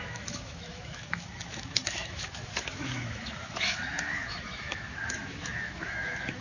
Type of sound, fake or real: fake